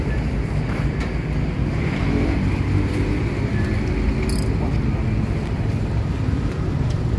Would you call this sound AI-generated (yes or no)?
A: no